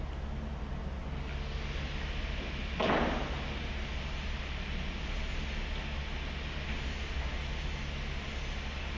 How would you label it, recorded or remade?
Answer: recorded